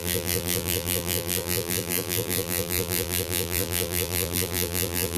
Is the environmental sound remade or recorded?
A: remade